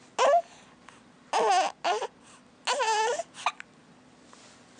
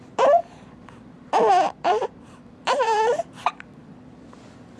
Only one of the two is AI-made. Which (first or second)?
second